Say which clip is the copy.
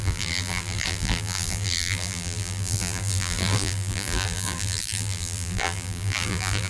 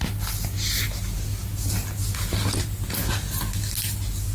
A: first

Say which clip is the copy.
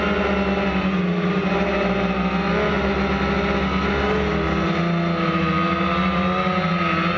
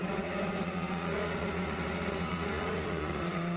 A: second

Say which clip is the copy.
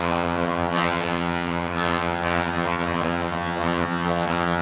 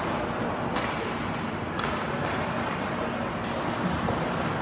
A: first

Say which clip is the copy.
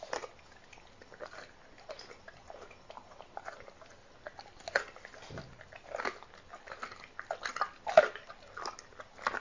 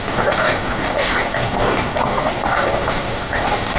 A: second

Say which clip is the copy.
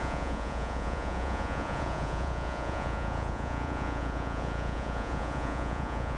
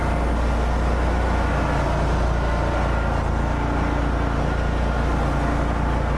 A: first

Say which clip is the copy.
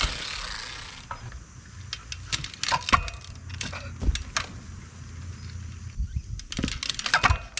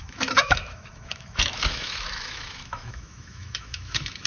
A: second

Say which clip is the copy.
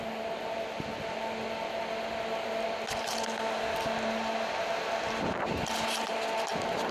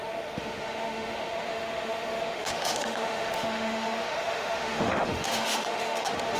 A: second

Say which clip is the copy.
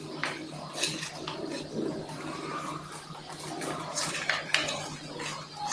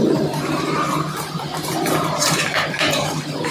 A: second